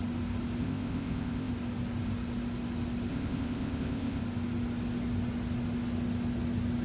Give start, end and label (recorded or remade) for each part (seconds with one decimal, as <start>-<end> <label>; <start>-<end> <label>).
0.0-0.6 recorded; 0.6-1.5 remade; 1.5-3.1 recorded; 3.1-4.2 remade; 4.2-6.8 recorded